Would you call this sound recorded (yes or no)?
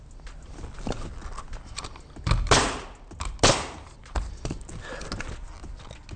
yes